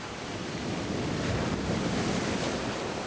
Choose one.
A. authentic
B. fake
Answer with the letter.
A